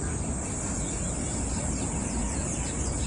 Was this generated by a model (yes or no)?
no